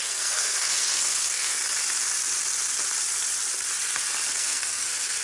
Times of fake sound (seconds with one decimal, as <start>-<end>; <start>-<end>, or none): 0.0-1.6; 4.3-5.2

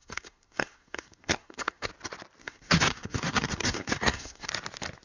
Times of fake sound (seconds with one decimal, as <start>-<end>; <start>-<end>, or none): 0.0-1.9; 2.4-4.5

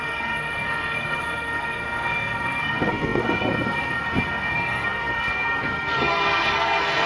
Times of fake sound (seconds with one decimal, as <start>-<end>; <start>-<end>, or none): 0.0-7.1

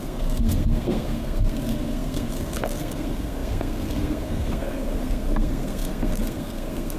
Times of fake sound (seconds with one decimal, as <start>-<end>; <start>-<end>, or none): 0.0-7.0